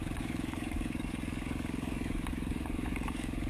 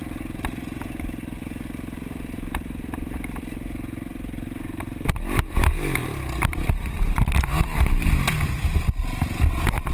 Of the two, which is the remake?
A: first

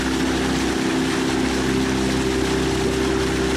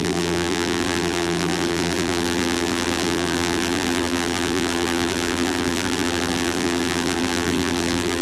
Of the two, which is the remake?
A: second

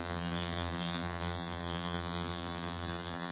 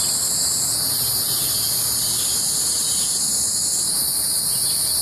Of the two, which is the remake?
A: first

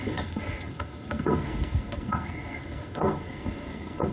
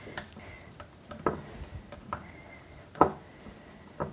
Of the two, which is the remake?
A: first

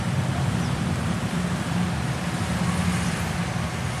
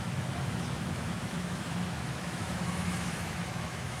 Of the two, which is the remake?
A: second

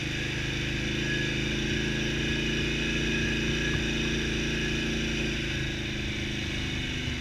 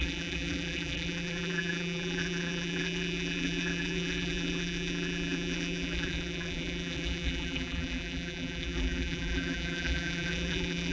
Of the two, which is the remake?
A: second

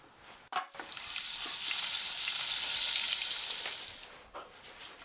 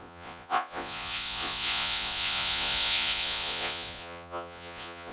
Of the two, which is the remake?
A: second